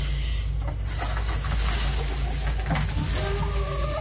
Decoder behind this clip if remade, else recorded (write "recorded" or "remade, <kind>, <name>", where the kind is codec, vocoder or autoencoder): recorded